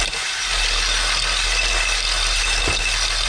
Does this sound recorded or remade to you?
recorded